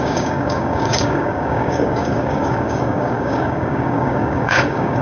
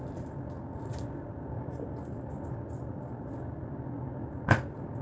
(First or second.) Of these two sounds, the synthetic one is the first